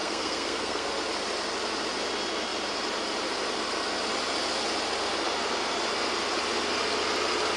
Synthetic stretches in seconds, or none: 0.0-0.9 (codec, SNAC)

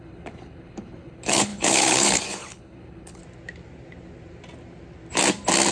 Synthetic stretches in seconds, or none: 0.0-3.2 (codec, HILCodec)

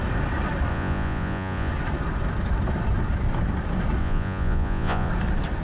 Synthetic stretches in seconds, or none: 0.7-1.7 (vocoder, Vocos); 4.0-5.1

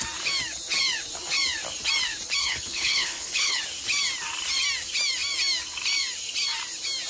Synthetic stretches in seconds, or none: 2.4-3.6 (codec, HILCodec)

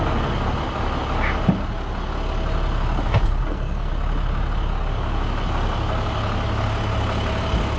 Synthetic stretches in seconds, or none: 3.4-3.9 (codec, SNAC)